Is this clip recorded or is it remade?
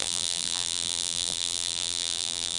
remade